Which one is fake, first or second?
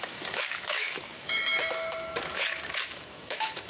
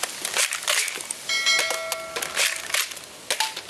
first